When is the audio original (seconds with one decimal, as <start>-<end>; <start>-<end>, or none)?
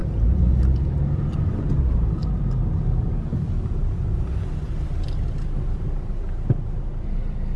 0.6-7.6